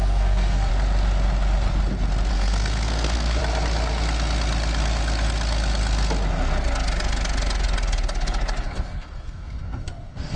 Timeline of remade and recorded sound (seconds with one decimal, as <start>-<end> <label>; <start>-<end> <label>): 0.0-0.7 remade; 0.7-2.3 recorded; 2.3-3.4 remade; 3.4-8.6 recorded; 8.6-10.4 remade